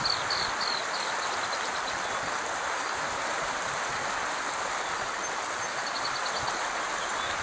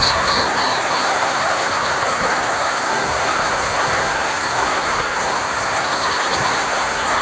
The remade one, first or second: second